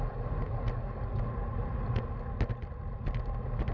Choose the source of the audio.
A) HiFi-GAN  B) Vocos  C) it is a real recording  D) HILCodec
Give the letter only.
C